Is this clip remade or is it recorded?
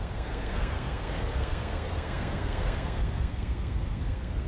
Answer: remade